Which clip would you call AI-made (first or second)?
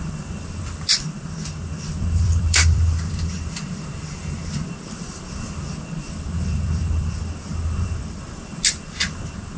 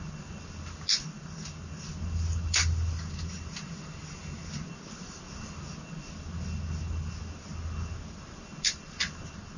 first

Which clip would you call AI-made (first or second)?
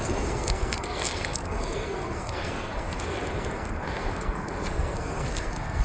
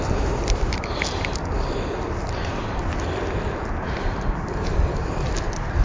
first